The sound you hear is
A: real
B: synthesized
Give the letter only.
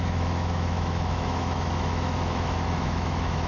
B